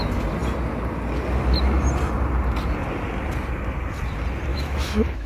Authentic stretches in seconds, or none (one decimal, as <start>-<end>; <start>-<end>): 0.0-4.5